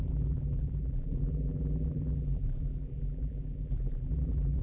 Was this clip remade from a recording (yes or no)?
yes